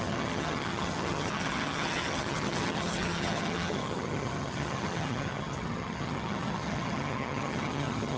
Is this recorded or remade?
remade